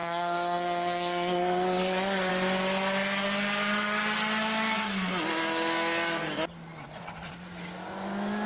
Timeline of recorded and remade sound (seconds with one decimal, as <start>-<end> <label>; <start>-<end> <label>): 0.0-2.3 remade; 2.3-8.5 recorded